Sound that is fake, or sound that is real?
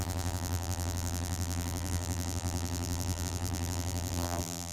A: fake